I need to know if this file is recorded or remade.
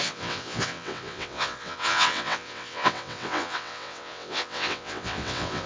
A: remade